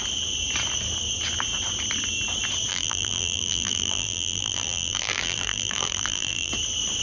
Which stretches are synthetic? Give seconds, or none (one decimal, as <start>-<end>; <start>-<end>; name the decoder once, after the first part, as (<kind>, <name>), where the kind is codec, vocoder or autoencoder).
2.7-6.5 (vocoder, BigVGAN v2)